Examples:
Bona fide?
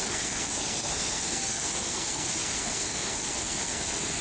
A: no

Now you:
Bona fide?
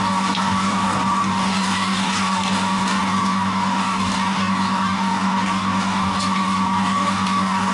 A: no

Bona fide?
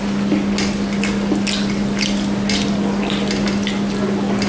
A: yes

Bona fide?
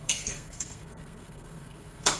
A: no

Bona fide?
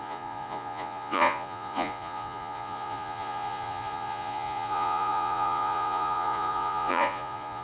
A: no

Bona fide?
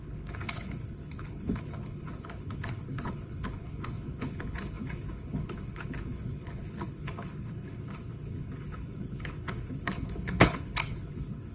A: no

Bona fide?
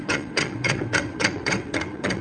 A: no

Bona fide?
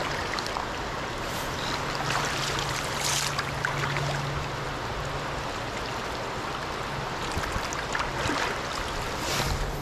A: yes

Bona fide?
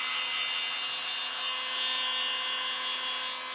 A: yes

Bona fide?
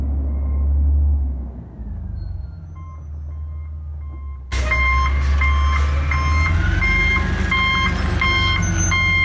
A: yes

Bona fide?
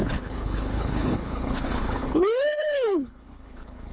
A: no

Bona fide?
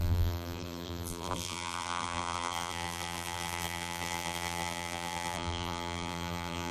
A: no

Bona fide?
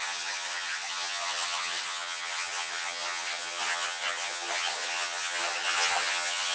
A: no